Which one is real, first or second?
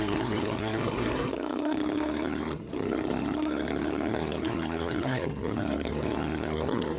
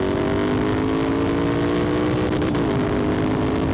second